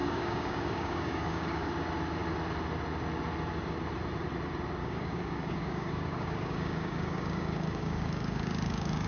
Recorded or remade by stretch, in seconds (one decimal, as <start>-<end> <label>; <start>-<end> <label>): 0.0-1.7 remade; 1.7-4.8 recorded; 4.8-9.1 remade